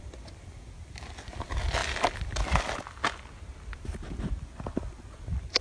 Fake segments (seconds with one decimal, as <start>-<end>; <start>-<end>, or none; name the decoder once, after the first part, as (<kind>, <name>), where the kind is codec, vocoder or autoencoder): none

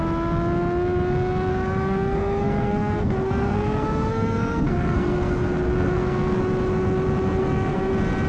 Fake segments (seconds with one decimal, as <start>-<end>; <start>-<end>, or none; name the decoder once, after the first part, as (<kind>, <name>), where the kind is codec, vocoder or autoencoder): 1.5-6.4 (codec, SNAC); 7.4-7.9

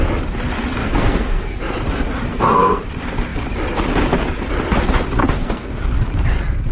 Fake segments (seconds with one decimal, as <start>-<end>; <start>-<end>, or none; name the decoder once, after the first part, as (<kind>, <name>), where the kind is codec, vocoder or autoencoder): 0.8-1.6 (codec, SNAC); 2.3-2.8; 5.2-5.7

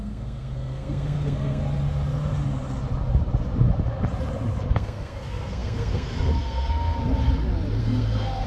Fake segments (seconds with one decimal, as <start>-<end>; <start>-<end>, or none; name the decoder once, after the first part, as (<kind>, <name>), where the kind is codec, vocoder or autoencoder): 0.0-1.6 (codec, SNAC); 4.7-7.0; 7.8-8.5

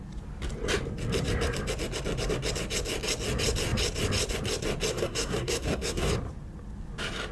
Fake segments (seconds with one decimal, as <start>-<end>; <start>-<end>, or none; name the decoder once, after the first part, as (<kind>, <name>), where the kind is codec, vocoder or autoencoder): 4.9-6.1 (codec, SNAC)